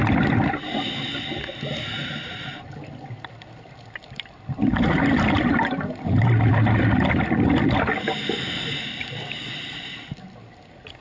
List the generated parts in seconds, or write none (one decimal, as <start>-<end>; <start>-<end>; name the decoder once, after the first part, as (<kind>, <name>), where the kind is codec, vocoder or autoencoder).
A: none